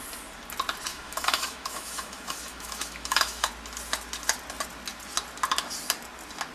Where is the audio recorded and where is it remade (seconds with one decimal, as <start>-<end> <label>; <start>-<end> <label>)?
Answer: 0.0-0.9 recorded; 0.9-3.5 remade; 3.5-6.5 recorded